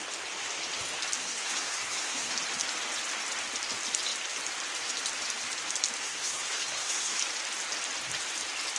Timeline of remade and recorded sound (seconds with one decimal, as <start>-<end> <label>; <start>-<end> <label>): 0.0-1.2 recorded; 1.2-2.3 remade; 2.3-6.0 recorded; 6.0-7.2 remade; 7.2-8.8 recorded